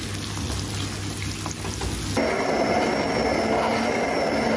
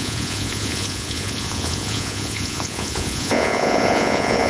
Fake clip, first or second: second